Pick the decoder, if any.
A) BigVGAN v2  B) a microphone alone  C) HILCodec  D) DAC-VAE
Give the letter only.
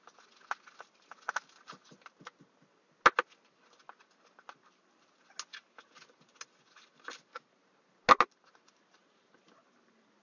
B